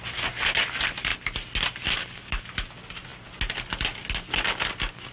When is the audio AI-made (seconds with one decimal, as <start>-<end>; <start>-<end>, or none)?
none